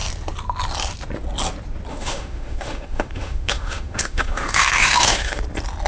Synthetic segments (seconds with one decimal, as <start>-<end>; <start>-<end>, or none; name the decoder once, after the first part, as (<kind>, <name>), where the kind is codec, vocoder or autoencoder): 1.9-5.4 (autoencoder, DAC-VAE)